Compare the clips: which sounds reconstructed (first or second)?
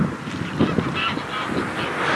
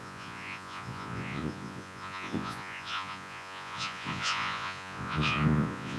second